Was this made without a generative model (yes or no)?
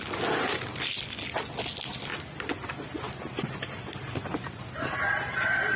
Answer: yes